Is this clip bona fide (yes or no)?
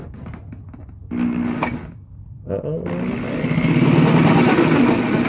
yes